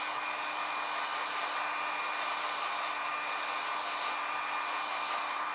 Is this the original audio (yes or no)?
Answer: yes